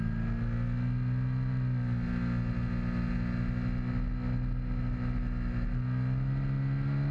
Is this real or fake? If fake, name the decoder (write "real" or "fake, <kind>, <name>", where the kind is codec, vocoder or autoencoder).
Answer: real